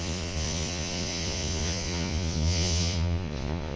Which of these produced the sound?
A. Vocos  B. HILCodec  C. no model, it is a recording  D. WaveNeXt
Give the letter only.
A